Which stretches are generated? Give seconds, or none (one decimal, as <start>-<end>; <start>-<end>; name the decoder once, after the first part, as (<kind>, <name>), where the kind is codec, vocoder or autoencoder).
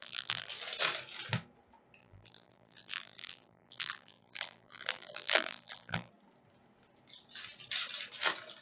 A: 0.0-0.5 (vocoder, BigVGAN v2); 2.0-6.1